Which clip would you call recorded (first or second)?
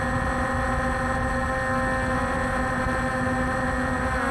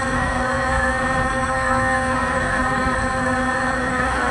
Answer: first